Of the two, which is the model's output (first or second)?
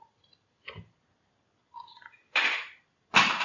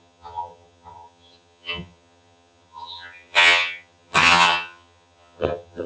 second